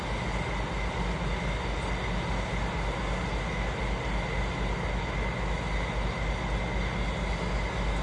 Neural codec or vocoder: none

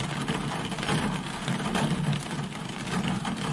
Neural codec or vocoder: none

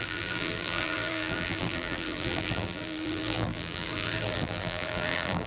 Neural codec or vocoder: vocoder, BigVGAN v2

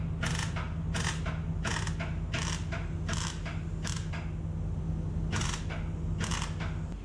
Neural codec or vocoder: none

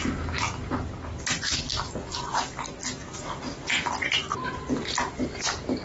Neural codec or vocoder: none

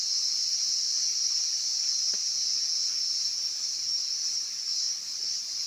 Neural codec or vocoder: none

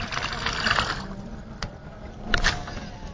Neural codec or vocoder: none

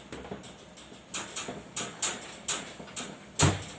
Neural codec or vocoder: none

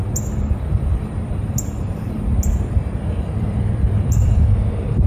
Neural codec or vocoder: vocoder, BigVGAN v2